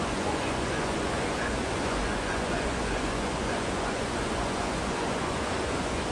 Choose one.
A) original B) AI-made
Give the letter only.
B